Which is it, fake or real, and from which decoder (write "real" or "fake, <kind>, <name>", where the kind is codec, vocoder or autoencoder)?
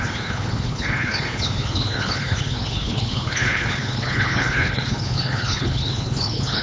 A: fake, codec, HILCodec